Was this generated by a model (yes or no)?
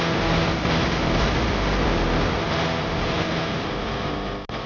no